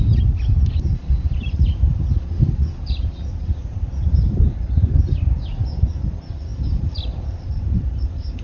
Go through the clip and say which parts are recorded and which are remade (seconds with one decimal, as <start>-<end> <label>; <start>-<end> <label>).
0.0-8.4 recorded